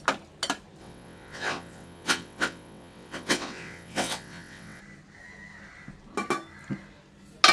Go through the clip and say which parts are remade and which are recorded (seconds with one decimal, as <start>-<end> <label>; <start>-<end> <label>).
0.0-0.8 recorded; 0.8-4.8 remade; 4.8-7.5 recorded